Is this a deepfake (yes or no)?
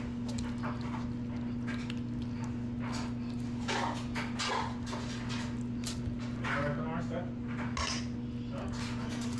no